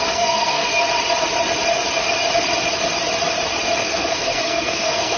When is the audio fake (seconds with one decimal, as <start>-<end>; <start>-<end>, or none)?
0.0-0.7; 3.8-5.2